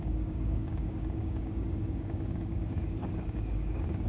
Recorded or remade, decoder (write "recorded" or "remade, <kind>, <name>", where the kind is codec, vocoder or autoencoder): remade, codec, DAC